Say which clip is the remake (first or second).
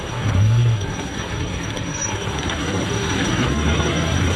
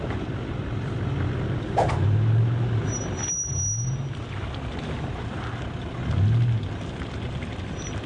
first